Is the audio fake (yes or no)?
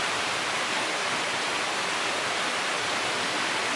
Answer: no